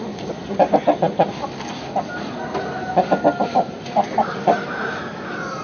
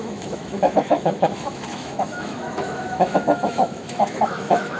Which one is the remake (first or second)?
second